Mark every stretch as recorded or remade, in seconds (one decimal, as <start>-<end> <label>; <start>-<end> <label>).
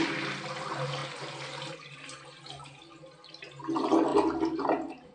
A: 0.0-5.1 recorded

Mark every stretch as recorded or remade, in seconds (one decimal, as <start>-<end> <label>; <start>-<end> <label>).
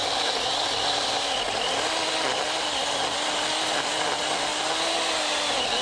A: 0.0-5.8 recorded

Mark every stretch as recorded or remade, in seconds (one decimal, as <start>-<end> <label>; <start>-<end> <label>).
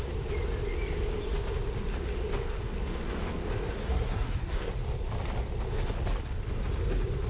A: 0.0-3.8 recorded; 3.8-4.7 remade; 4.7-7.3 recorded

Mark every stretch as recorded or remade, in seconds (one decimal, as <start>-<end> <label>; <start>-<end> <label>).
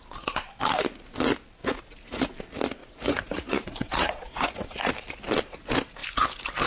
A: 0.0-1.6 recorded; 1.6-2.3 remade; 2.3-2.8 recorded; 2.8-4.9 remade; 4.9-6.7 recorded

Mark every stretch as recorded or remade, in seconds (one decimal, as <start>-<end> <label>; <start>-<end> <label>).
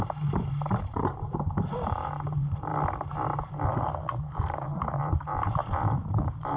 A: 0.0-2.7 remade; 2.7-4.3 recorded; 4.3-6.6 remade